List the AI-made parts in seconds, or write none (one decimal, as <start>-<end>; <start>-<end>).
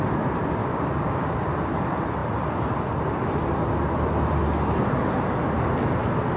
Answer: 0.6-1.3